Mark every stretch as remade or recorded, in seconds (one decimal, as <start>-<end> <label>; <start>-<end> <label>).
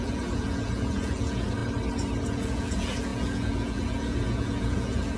0.0-1.6 remade; 1.6-2.2 recorded; 2.2-5.2 remade